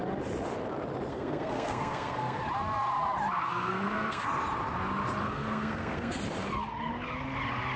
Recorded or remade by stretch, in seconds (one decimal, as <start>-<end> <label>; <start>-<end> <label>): 0.0-1.1 recorded; 1.1-2.4 remade; 2.4-3.5 recorded; 3.5-4.3 remade; 4.3-5.2 recorded; 5.2-6.2 remade; 6.2-7.8 recorded